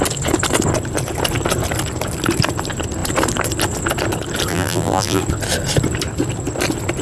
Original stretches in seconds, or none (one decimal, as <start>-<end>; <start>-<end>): 0.0-4.5; 5.2-7.0